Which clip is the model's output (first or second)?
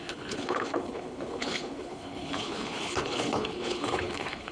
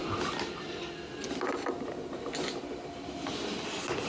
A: first